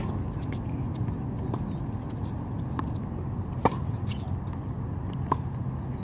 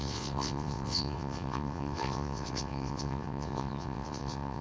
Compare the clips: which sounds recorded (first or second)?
first